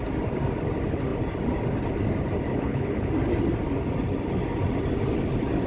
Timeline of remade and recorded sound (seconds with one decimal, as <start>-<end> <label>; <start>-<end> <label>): 0.0-2.5 recorded; 2.5-3.1 remade; 3.1-5.7 recorded